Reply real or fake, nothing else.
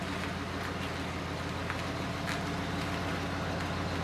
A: real